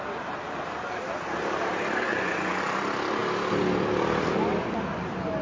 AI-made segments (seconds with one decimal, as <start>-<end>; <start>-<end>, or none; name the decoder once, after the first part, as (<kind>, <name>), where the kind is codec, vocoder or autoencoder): 2.1-2.6 (vocoder, Vocos)